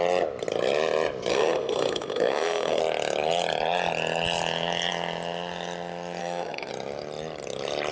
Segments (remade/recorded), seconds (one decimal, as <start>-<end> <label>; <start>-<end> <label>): 0.0-1.3 recorded; 1.3-2.8 remade; 2.8-6.2 recorded; 6.2-6.7 remade; 6.7-7.9 recorded